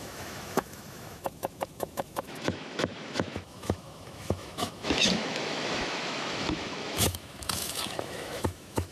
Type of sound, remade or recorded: remade